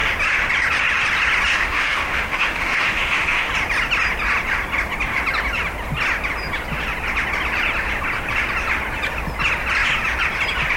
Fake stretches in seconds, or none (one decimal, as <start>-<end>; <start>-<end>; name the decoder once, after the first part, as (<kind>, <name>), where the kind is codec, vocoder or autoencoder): 1.5-3.5 (autoencoder, DAC-VAE)